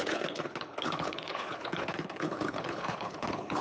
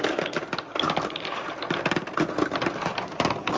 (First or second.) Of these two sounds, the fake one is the first